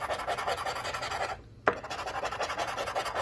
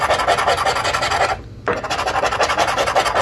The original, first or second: second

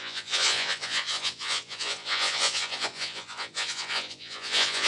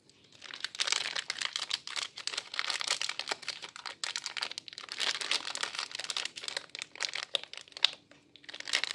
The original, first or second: second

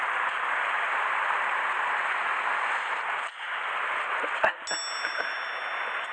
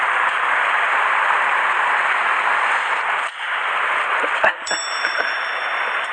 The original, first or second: first